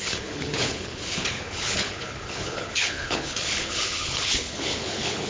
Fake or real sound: fake